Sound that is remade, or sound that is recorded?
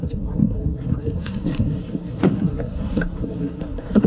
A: remade